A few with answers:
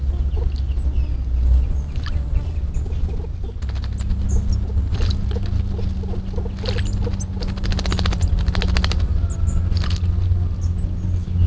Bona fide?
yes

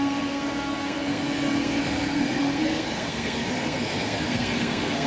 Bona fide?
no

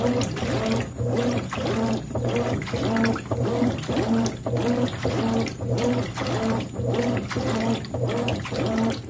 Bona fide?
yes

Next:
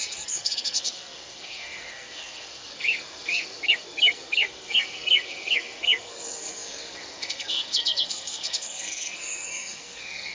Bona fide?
no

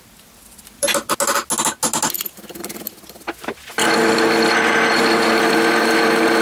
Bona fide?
yes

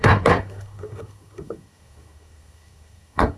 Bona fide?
no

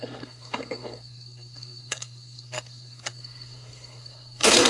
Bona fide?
no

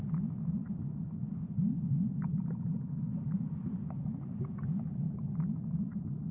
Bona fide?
yes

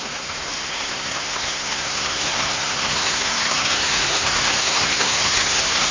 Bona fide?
no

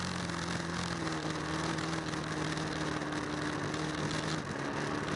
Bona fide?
yes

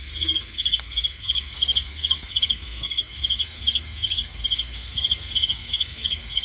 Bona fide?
no